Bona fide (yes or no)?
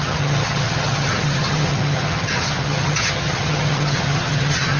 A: no